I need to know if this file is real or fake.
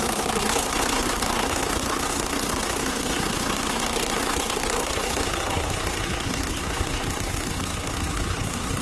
fake